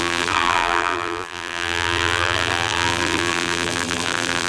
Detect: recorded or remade remade